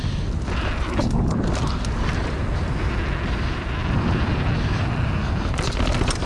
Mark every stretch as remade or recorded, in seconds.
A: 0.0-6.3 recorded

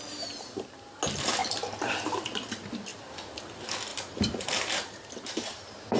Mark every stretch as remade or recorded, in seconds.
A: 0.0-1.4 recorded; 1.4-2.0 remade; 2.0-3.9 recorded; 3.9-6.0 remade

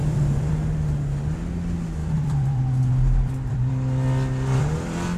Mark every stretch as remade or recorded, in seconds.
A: 0.0-0.5 remade; 0.5-2.0 recorded; 2.0-5.2 remade

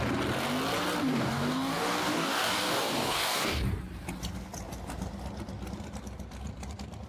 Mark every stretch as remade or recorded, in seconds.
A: 0.0-1.0 recorded; 1.0-3.6 remade; 3.6-7.1 recorded